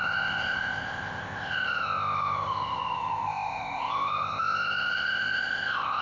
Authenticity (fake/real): fake